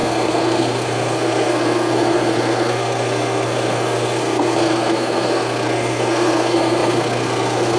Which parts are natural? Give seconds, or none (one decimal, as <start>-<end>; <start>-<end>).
none